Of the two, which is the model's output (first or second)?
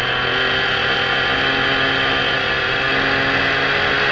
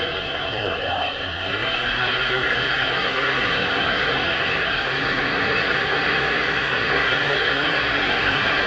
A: second